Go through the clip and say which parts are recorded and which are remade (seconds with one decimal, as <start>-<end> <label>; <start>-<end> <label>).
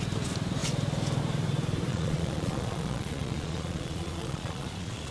0.0-1.9 recorded; 1.9-5.1 remade